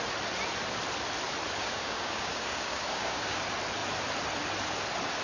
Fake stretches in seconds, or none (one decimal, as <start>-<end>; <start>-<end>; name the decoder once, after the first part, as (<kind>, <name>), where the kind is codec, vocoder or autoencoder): 1.6-3.4 (codec, DAC)